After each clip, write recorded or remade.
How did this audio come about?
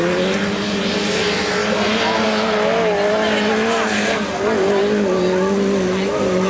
recorded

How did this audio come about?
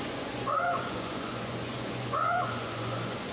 remade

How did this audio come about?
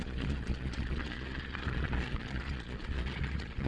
remade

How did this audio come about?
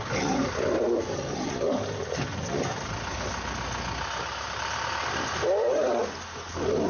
recorded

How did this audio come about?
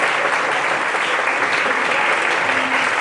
recorded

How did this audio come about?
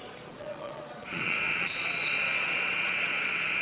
remade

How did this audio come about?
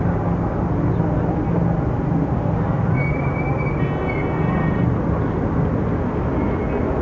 recorded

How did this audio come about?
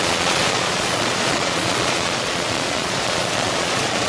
remade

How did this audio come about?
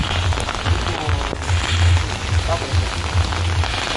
recorded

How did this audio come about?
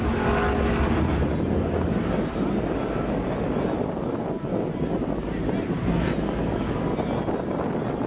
recorded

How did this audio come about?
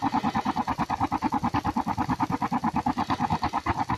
recorded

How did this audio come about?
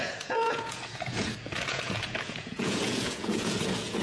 remade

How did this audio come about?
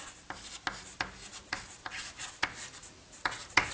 recorded